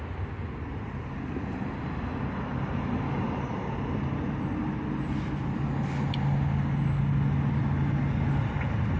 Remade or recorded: recorded